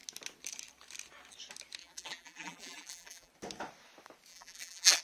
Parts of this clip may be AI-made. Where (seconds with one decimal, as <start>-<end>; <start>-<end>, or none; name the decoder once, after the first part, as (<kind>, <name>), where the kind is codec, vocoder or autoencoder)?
1.8-3.3 (vocoder, BigVGAN v2); 4.3-5.0